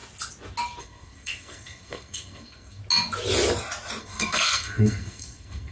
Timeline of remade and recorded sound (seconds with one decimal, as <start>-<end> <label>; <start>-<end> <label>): 0.0-0.8 recorded; 0.8-2.8 remade; 2.8-4.0 recorded; 4.0-5.7 remade